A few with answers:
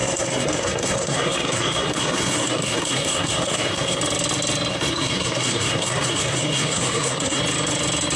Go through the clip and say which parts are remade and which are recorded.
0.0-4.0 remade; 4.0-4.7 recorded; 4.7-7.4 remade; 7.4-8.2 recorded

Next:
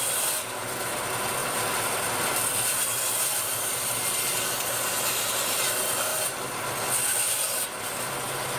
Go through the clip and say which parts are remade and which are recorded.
0.0-1.4 recorded; 1.4-2.2 remade; 2.2-2.9 recorded; 2.9-3.7 remade; 3.7-6.1 recorded; 6.1-6.6 remade; 6.6-8.6 recorded

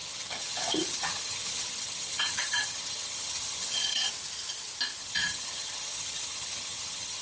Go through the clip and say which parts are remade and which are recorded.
0.0-4.1 remade; 4.1-5.0 recorded; 5.0-7.2 remade

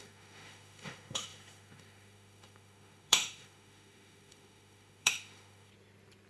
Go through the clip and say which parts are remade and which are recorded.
0.0-5.7 remade; 5.7-6.3 recorded

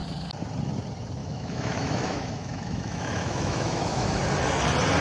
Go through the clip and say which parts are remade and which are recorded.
0.0-1.2 recorded; 1.2-4.2 remade; 4.2-5.0 recorded

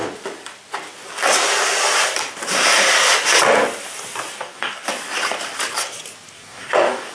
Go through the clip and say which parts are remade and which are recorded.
0.0-4.3 recorded; 4.3-4.9 remade; 4.9-6.3 recorded; 6.3-7.1 remade

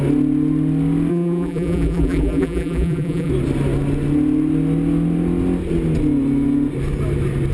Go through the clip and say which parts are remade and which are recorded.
0.0-1.1 recorded; 1.1-3.3 remade; 3.3-7.5 recorded

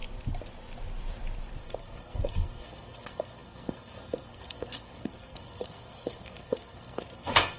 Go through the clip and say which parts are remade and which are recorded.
0.0-1.6 recorded; 1.6-7.6 remade